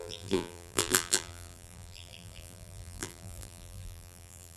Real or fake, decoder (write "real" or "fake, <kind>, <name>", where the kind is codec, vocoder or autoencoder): fake, vocoder, BigVGAN v2